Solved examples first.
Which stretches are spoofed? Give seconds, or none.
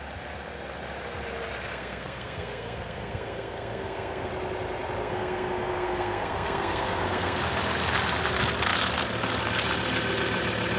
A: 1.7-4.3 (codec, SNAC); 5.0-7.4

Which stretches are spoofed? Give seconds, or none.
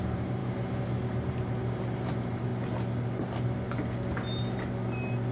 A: 0.0-2.5 (vocoder, BigVGAN v2)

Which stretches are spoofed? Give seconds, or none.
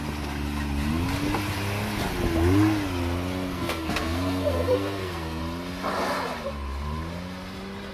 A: 3.5-5.4 (codec, SNAC)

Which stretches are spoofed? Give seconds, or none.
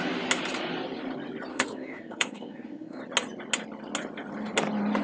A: 1.5-3.0 (autoencoder, DAC-VAE)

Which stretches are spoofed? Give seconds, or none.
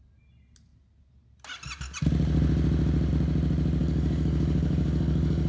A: 3.8-5.5 (codec, DAC)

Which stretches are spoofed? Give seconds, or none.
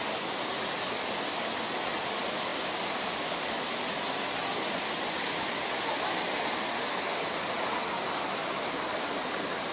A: none